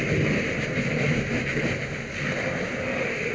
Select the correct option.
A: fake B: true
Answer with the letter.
B